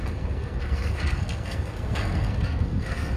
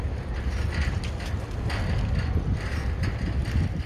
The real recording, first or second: second